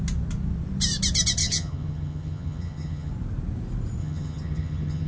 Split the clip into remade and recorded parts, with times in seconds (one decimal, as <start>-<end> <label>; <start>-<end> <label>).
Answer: 0.0-1.4 recorded; 1.4-3.1 remade; 3.1-4.0 recorded; 4.0-5.1 remade